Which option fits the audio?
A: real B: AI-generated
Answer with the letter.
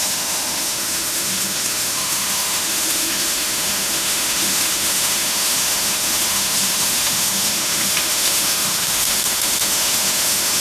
B